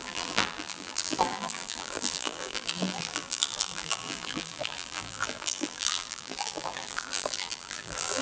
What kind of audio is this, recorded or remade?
remade